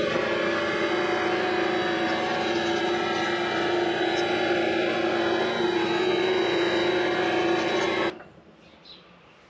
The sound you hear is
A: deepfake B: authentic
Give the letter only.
B